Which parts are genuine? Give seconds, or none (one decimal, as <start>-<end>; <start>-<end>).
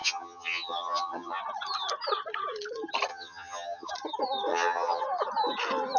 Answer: 1.4-3.1; 3.9-4.5; 5.0-6.0